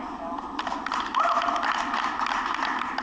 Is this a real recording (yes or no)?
yes